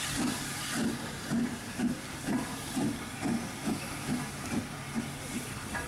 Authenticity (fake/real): real